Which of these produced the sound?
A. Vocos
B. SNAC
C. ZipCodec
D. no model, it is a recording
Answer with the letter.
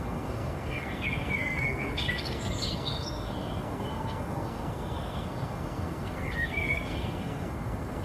B